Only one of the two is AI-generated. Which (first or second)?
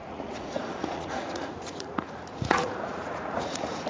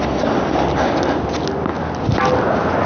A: first